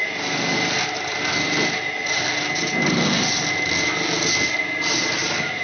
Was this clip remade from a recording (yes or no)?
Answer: no